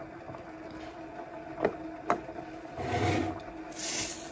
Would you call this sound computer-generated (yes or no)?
no